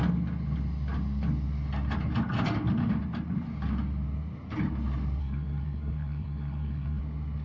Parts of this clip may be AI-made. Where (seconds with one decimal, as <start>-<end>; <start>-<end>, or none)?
5.2-7.0